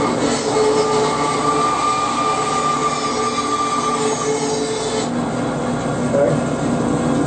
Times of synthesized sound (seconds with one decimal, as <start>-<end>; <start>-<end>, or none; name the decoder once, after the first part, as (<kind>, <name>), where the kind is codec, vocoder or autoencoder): none